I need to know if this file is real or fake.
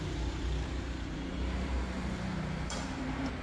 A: fake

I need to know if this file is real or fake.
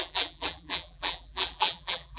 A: fake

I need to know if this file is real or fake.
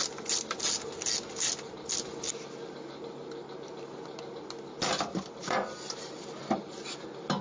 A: real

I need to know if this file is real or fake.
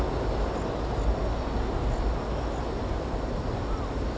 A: real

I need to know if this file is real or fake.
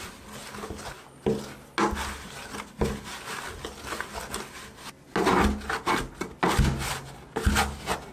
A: real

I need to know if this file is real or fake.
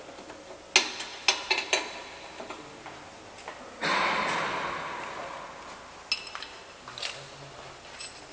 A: real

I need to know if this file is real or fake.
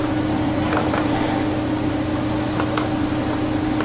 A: real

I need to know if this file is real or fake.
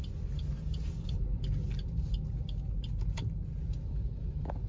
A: real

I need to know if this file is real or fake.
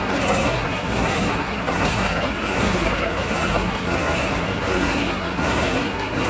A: fake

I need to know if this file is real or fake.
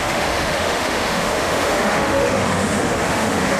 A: fake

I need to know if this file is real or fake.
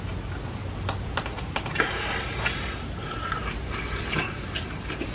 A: real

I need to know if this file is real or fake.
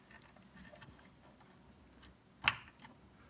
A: real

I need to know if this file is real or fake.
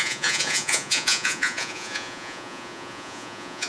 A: fake